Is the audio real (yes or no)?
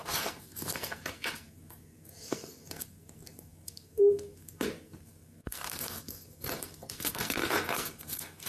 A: no